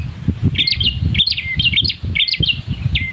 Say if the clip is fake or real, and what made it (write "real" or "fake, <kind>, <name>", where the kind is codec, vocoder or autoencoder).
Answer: real